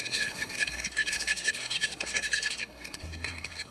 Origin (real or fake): fake